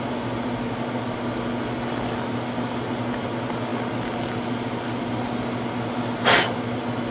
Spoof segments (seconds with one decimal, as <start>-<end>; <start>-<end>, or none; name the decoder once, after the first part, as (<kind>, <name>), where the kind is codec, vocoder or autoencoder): none